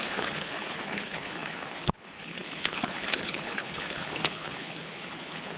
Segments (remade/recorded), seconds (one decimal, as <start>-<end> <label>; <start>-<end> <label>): 0.0-5.6 remade